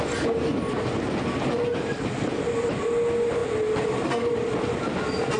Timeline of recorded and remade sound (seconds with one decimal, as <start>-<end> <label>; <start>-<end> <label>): 0.0-1.7 recorded; 1.7-2.2 remade; 2.2-5.4 recorded